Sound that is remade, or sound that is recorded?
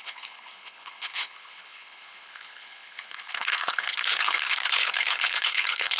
remade